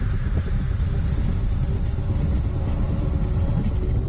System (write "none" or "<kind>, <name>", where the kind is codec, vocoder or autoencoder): none